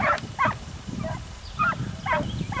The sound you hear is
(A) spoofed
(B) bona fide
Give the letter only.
B